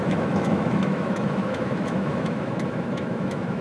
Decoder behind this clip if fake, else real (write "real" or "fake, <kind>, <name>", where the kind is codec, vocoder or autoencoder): fake, autoencoder, DAC-VAE